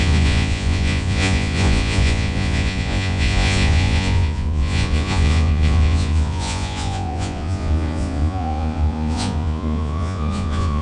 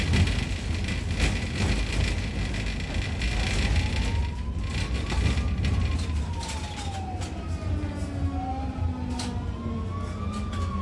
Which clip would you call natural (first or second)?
second